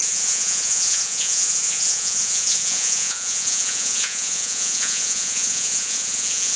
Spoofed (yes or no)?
yes